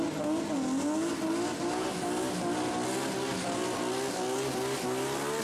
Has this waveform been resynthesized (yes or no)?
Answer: no